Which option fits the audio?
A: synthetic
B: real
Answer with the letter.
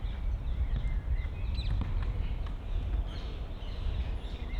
B